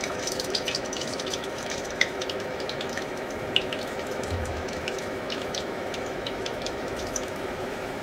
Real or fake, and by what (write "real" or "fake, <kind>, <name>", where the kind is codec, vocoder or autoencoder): fake, autoencoder, DAC-VAE